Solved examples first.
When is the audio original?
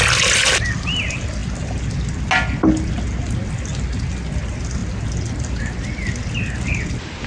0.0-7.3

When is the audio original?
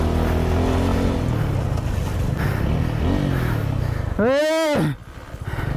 0.0-5.0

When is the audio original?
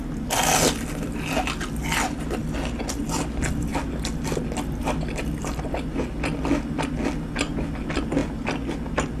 0.0-9.2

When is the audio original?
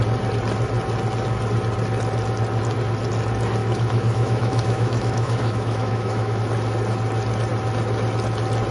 0.0-3.6; 6.4-8.7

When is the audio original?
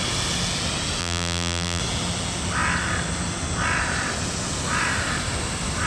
0.0-1.0; 1.8-5.9